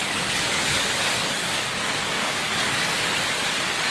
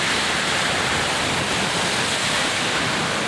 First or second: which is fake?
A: first